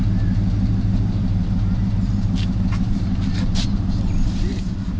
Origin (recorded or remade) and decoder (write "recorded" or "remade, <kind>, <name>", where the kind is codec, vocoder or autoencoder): remade, vocoder, BigVGAN v2